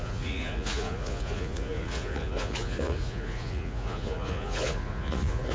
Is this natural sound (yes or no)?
no